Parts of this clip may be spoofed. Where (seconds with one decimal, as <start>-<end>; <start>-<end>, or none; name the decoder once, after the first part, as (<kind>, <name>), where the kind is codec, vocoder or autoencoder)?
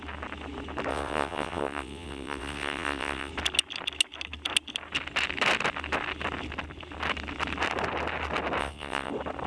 0.9-3.3 (vocoder, WaveNeXt); 8.6-9.1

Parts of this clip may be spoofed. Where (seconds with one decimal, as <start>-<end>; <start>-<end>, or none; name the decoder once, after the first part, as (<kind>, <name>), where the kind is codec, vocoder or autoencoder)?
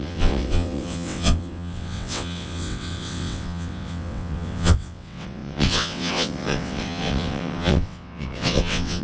0.0-9.0 (vocoder, WaveNeXt)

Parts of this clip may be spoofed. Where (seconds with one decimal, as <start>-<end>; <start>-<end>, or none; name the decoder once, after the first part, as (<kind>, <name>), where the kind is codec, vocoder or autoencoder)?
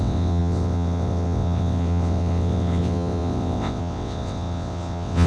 0.0-5.3 (vocoder, WaveNeXt)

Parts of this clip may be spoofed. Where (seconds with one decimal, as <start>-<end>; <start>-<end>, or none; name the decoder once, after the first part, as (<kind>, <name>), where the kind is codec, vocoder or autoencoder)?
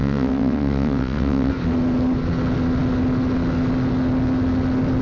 0.0-1.5 (vocoder, WaveNeXt)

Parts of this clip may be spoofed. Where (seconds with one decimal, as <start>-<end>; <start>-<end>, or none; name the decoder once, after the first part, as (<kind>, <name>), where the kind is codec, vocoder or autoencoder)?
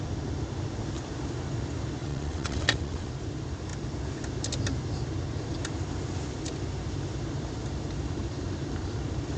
2.0-3.1 (vocoder, WaveNeXt)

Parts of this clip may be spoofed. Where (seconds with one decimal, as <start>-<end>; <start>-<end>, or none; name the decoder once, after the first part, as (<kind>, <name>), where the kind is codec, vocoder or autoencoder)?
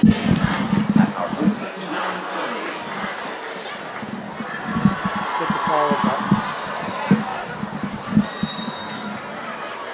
none